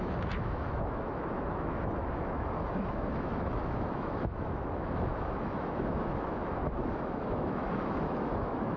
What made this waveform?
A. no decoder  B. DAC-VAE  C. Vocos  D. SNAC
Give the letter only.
B